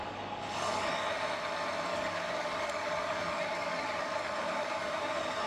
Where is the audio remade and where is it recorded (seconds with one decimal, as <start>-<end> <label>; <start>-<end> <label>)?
0.0-0.9 remade; 0.9-1.9 recorded; 1.9-5.5 remade